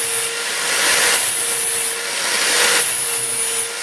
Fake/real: real